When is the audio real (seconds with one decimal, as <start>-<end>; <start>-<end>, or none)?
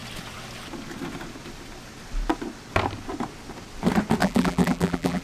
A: 0.0-4.2